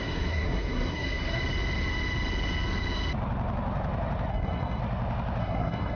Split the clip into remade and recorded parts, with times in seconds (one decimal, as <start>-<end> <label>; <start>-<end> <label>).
0.0-1.4 remade; 1.4-4.3 recorded; 4.3-4.8 remade; 4.8-5.4 recorded; 5.4-5.9 remade